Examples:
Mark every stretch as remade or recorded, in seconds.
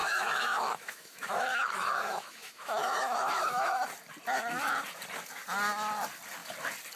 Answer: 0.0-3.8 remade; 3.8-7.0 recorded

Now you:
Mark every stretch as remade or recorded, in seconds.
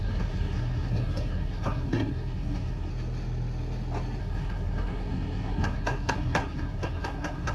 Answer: 0.0-2.9 remade; 2.9-4.2 recorded; 4.2-7.5 remade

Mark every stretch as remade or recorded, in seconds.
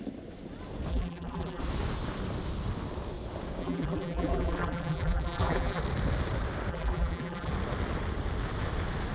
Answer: 0.0-0.9 recorded; 0.9-1.6 remade; 1.6-3.6 recorded; 3.6-5.8 remade; 5.8-6.7 recorded; 6.7-7.5 remade; 7.5-9.1 recorded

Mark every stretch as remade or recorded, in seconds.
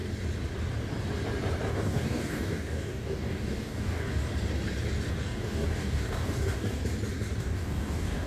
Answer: 0.0-1.7 recorded; 1.7-4.2 remade; 4.2-5.1 recorded; 5.1-6.8 remade; 6.8-7.4 recorded; 7.4-8.3 remade